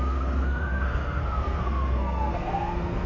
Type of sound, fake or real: fake